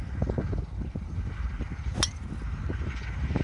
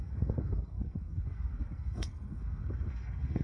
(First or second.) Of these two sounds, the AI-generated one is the second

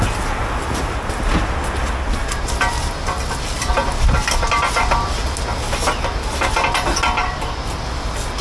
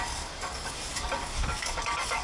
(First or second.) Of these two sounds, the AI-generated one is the second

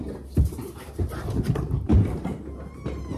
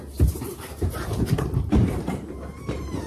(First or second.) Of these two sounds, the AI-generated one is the second